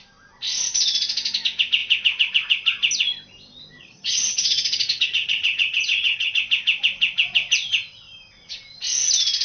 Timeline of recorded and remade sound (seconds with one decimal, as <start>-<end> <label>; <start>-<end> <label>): 0.0-3.8 recorded; 3.8-6.4 remade; 6.4-9.4 recorded